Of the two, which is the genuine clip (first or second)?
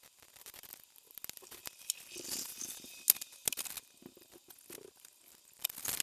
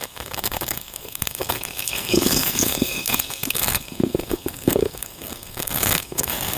first